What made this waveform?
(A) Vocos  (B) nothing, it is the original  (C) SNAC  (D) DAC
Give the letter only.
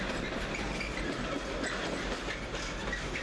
B